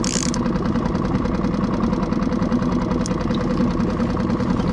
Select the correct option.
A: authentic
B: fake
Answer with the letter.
A